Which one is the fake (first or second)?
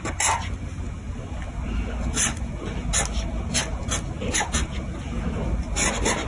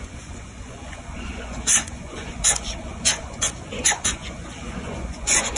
second